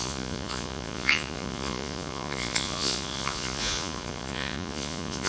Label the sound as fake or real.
fake